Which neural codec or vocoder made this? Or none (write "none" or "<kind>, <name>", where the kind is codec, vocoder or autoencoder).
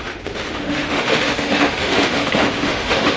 autoencoder, DAC-VAE